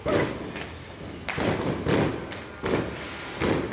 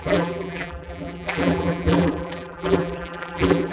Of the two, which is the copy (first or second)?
second